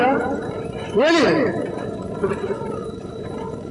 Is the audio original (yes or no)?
no